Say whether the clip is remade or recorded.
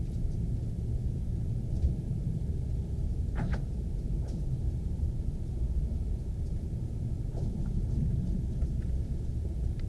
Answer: remade